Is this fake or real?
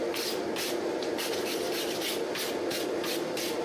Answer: real